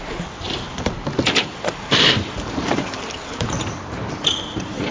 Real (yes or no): no